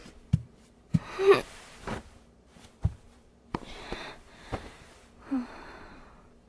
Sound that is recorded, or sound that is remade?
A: remade